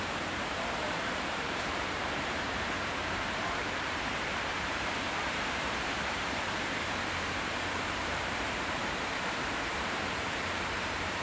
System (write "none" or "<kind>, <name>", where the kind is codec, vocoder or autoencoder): vocoder, BigVGAN v2